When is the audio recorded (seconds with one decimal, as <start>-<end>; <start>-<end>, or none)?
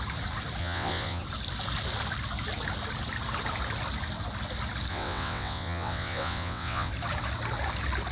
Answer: 0.0-0.6; 1.2-4.9; 6.9-8.1